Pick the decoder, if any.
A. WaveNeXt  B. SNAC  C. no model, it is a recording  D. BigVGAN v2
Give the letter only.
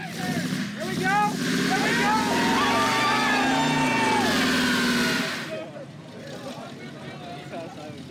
C